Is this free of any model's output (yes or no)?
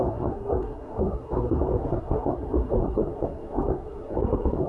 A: no